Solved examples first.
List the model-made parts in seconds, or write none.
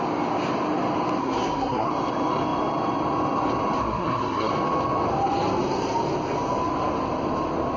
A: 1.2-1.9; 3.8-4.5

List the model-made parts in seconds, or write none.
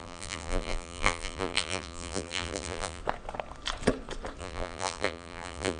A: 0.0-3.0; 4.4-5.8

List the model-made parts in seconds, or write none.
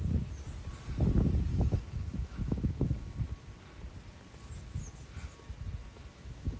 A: 1.5-3.2; 5.8-6.6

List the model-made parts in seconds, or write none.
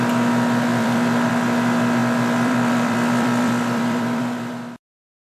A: 0.7-1.3; 2.0-4.5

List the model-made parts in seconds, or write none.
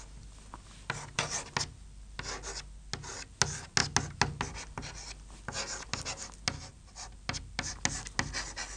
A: none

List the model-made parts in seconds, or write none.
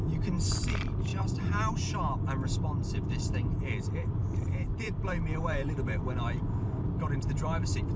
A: 0.0-8.0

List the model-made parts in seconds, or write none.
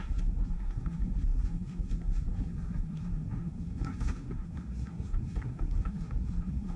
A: 0.0-6.8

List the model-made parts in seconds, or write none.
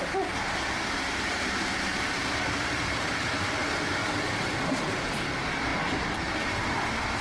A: 1.9-3.4; 4.0-5.1